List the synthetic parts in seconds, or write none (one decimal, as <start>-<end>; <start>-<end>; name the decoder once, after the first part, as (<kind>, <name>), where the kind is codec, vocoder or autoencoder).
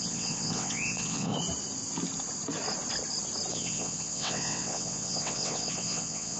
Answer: 0.0-1.3 (vocoder, WaveNeXt); 3.5-6.4